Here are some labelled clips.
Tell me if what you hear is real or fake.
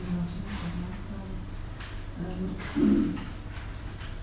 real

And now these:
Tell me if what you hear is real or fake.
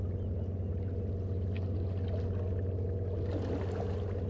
real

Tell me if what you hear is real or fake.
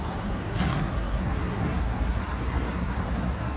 fake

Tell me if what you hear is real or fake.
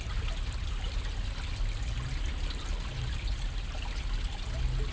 real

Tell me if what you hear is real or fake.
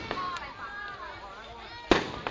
real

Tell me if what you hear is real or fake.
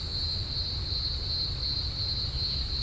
real